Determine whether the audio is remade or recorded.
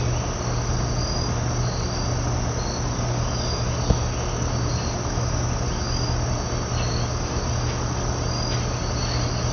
recorded